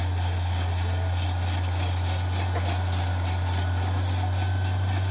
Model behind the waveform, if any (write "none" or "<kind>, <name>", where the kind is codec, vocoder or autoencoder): none